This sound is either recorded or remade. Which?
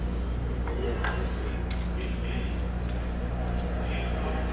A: recorded